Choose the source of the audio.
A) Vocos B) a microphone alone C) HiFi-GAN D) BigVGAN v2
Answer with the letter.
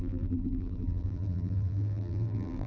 D